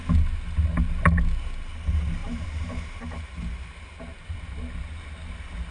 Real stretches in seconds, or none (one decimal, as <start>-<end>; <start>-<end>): 0.0-2.2; 4.5-5.7